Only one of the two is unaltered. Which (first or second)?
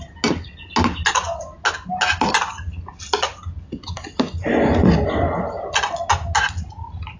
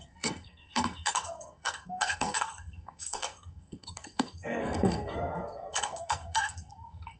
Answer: first